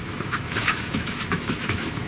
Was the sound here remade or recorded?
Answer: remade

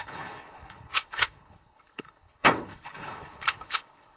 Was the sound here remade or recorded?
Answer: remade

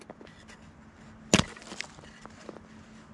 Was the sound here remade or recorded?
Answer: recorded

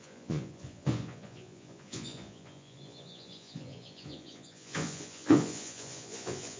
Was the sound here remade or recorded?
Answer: remade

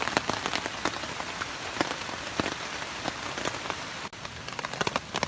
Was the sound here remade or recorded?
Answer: recorded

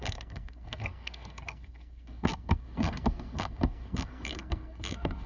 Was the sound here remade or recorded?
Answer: remade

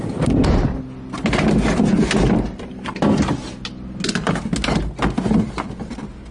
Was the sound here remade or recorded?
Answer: recorded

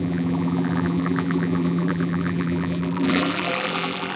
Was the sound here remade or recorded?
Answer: remade